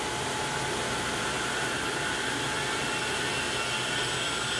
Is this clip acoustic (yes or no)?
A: yes